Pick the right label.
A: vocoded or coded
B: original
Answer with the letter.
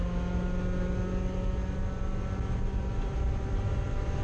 B